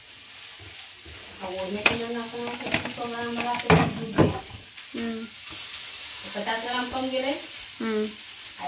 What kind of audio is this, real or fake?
real